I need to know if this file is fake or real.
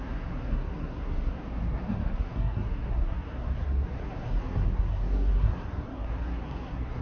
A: fake